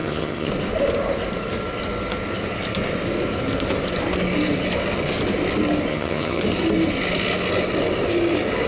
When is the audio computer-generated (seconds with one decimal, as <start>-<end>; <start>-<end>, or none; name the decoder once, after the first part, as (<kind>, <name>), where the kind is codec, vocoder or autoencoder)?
0.0-0.5 (vocoder, HiFi-GAN); 5.9-6.4